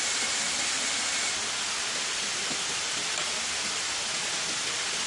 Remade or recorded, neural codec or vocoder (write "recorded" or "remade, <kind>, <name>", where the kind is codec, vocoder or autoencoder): recorded